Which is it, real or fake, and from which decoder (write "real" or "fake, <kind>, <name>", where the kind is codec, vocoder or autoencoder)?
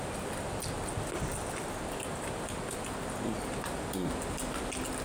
real